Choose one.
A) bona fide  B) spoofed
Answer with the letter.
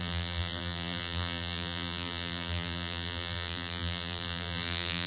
B